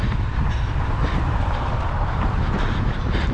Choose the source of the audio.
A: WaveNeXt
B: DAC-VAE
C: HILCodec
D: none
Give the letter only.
D